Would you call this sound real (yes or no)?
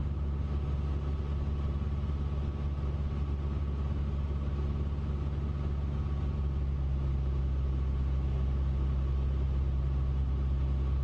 yes